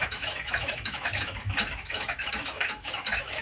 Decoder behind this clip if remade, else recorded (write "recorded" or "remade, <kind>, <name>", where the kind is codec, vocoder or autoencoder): remade, autoencoder, DAC-VAE